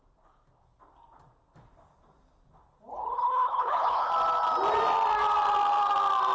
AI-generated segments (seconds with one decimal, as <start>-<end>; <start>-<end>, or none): 2.9-4.1